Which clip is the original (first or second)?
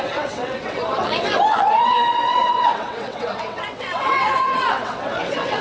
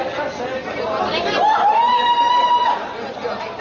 second